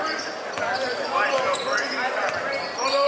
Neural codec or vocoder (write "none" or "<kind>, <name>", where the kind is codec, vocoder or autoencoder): none